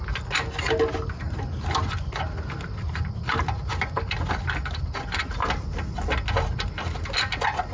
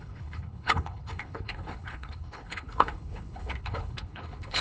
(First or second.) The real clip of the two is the first